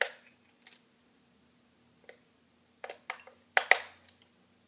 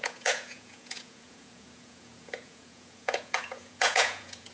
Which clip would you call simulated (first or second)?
second